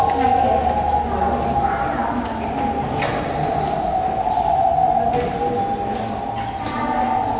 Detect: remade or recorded recorded